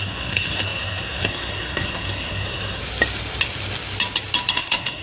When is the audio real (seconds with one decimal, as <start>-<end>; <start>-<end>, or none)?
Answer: 2.8-4.5